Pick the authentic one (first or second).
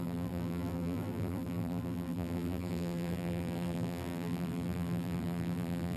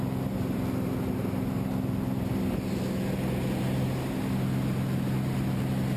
second